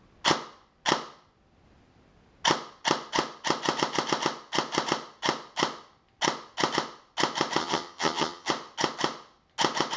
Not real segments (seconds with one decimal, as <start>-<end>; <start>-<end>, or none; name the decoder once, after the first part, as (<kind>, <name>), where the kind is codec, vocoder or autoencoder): 7.6-8.5 (vocoder, HiFi-GAN)